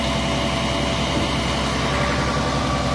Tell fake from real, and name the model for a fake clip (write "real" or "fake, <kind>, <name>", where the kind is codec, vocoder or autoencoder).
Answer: real